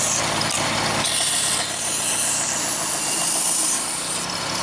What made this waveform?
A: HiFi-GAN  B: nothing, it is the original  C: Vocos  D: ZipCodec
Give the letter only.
B